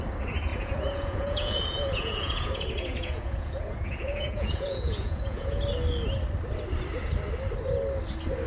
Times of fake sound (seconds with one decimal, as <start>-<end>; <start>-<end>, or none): 0.5-5.6